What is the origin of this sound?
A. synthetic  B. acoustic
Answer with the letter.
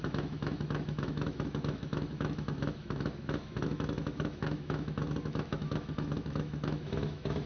A